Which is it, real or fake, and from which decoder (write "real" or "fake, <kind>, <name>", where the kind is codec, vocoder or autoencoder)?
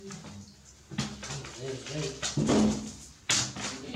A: real